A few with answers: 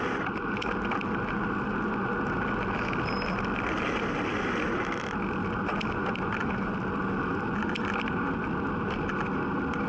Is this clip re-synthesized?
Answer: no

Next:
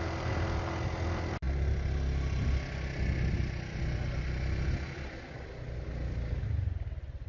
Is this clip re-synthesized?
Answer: no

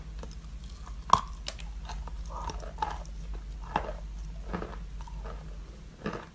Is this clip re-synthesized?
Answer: no